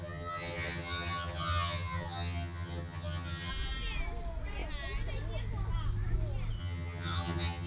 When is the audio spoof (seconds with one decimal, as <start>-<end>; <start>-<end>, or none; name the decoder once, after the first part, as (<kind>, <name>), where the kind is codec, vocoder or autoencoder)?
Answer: 0.0-3.5 (vocoder, HiFi-GAN); 6.6-7.7

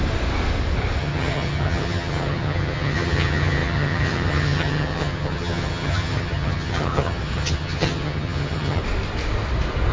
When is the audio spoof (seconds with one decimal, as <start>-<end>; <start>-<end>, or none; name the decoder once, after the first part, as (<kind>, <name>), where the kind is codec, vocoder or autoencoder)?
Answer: 1.0-8.8 (vocoder, HiFi-GAN)

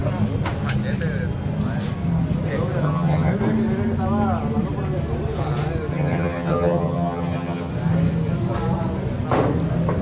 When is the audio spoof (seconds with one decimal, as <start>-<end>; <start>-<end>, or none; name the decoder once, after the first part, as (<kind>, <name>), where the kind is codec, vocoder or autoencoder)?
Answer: 2.8-3.3 (vocoder, HiFi-GAN); 5.9-7.7